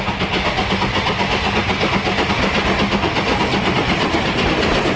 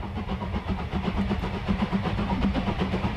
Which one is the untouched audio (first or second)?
first